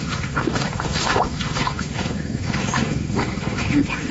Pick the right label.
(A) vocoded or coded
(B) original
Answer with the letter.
A